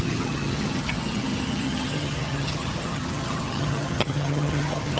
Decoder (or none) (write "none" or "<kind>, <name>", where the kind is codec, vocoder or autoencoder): vocoder, HiFi-GAN